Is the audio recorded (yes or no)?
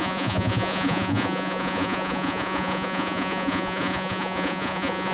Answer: no